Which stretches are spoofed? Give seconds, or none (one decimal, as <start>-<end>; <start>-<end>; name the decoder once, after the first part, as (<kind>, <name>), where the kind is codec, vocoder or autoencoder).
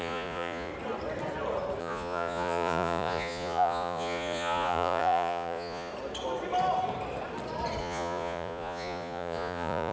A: 0.0-0.7 (vocoder, Vocos); 1.8-5.9; 7.8-9.9